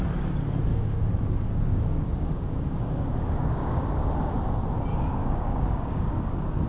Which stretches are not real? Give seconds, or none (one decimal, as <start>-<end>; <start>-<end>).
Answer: 0.7-4.1; 4.9-6.3

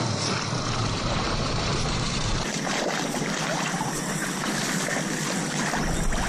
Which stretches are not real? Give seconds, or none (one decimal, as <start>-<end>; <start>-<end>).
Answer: 0.8-4.6

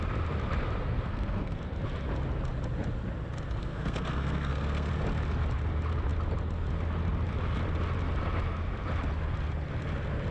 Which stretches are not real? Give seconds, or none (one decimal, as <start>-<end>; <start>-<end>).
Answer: 0.8-1.6; 3.6-4.9

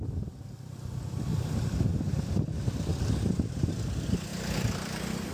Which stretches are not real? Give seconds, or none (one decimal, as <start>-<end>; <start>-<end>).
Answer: none

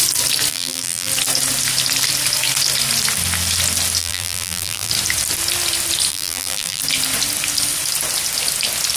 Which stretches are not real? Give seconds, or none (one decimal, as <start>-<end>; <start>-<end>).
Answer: 0.5-1.1; 4.0-4.9; 6.1-6.8